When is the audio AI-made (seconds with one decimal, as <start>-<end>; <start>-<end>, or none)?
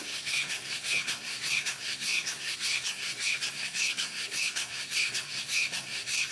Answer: 0.0-6.3